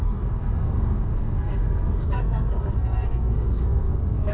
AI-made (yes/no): yes